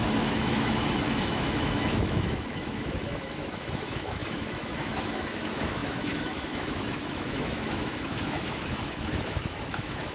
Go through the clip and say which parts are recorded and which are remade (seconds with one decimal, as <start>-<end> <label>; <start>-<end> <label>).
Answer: 0.0-10.1 remade